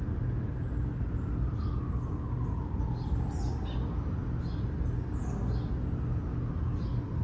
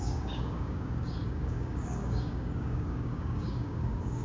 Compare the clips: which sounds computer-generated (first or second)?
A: second